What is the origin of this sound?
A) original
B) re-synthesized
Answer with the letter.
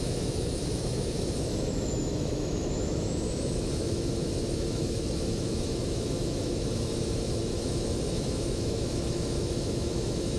B